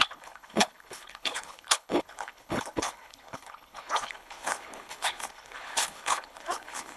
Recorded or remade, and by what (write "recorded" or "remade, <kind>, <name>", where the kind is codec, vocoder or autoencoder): remade, codec, HILCodec